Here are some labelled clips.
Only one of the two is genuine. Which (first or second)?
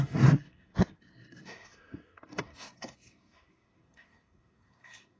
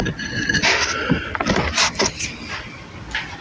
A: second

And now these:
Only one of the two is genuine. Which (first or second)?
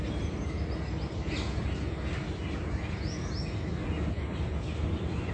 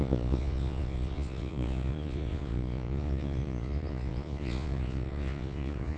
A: first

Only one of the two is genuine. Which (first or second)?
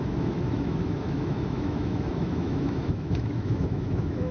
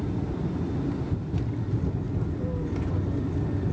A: second